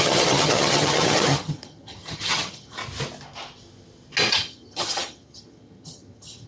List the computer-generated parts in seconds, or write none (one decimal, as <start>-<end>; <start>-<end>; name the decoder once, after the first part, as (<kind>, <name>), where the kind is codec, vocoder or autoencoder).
0.0-2.8 (vocoder, HiFi-GAN); 4.3-6.5